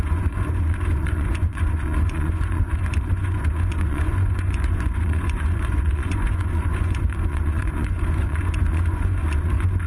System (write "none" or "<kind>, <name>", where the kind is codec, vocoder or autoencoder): vocoder, Vocos